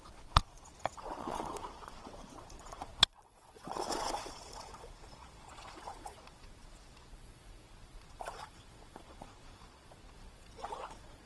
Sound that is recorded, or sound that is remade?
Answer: remade